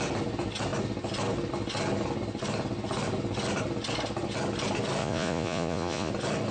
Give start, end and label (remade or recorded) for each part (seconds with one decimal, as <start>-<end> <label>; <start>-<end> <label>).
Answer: 0.0-5.0 recorded; 5.0-6.1 remade; 6.1-6.5 recorded